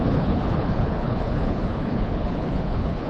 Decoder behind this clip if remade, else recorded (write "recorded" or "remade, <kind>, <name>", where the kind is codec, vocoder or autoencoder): remade, codec, HILCodec